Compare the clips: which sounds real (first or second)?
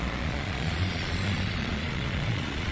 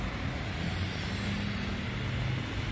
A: second